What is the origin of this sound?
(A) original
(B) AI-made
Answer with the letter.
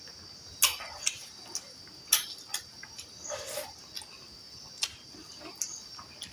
A